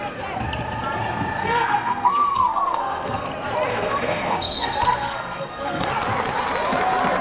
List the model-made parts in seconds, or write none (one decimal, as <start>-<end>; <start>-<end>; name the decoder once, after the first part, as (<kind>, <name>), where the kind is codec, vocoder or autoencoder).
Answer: 1.4-3.3 (codec, SNAC); 3.7-5.9